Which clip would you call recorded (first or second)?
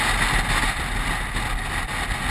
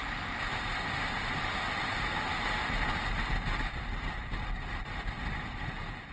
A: first